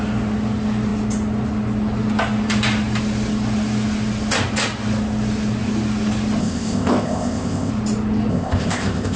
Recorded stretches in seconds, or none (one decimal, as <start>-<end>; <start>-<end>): 0.0-6.4; 7.7-8.3